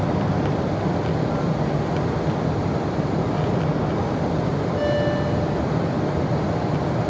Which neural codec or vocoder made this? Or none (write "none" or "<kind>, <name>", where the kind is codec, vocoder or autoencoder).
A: none